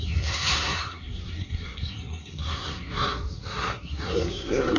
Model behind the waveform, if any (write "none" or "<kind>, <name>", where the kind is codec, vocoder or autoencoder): codec, SNAC